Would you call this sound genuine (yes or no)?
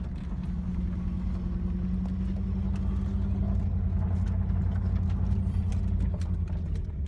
yes